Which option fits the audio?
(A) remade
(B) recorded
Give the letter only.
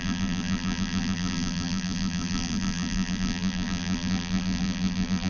A